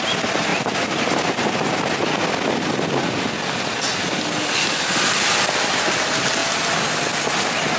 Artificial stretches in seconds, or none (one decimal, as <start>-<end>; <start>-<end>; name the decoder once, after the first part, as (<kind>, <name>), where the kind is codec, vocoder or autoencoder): none